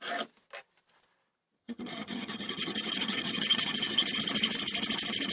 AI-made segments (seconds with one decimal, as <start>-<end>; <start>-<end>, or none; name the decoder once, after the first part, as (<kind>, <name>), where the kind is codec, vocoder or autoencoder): 1.6-4.2 (vocoder, HiFi-GAN)